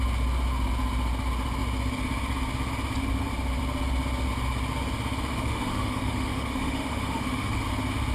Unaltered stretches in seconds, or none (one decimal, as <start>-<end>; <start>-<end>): 0.0-5.3; 7.6-8.1